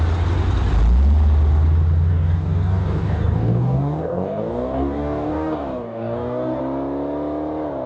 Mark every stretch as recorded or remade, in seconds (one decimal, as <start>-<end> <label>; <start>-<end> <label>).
0.0-2.1 recorded; 2.1-6.6 remade; 6.6-7.9 recorded